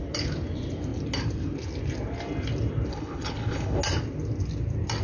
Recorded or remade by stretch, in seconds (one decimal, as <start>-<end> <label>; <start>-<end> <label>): 0.0-2.9 recorded; 2.9-3.8 remade; 3.8-5.0 recorded